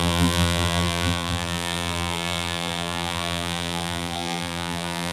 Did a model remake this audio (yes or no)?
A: yes